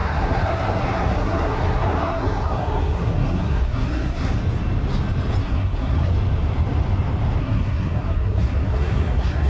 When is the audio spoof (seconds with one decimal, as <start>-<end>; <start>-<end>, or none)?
0.0-4.4; 5.4-6.1; 7.4-9.5